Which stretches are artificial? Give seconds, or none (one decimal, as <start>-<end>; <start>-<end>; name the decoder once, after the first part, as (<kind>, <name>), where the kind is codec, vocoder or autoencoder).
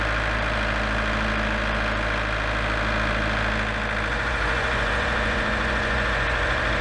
4.1-6.8 (vocoder, Vocos)